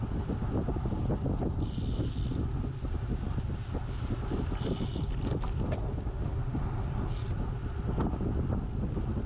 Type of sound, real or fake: real